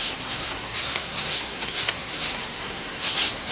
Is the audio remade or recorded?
remade